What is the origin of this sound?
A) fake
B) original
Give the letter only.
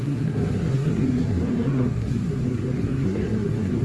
A